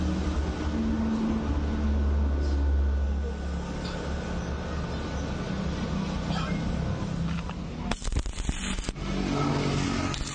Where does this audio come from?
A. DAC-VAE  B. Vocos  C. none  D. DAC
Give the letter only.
C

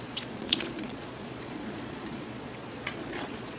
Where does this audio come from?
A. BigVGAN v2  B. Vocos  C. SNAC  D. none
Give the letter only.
B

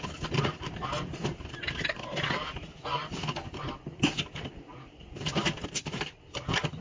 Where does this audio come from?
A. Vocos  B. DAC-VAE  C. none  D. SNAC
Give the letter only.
C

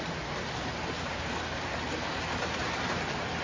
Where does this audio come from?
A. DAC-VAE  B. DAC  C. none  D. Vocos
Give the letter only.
C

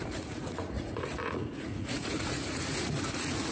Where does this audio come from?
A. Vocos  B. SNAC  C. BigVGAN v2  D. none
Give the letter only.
A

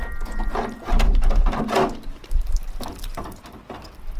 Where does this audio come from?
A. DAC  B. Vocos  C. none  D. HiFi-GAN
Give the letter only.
C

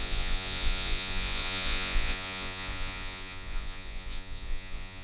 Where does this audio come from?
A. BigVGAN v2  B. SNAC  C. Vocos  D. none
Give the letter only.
C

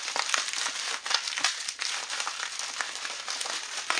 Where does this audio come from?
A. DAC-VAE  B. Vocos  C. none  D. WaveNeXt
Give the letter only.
C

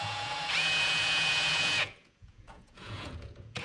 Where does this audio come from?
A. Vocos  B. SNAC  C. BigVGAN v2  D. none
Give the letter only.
A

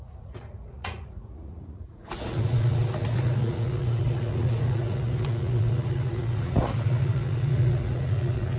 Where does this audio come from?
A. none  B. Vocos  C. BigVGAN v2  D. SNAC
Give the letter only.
B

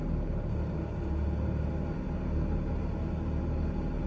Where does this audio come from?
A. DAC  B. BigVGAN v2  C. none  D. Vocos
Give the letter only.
C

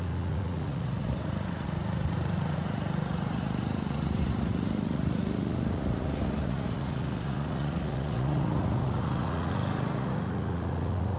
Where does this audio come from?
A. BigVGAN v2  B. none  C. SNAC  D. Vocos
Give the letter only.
D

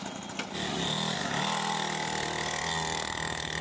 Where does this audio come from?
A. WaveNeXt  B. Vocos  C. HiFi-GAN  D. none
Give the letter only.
D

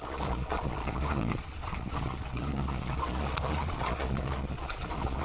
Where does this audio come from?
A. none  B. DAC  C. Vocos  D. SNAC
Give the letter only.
C